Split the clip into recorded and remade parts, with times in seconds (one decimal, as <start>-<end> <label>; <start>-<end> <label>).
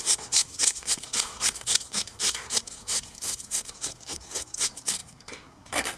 0.0-6.0 remade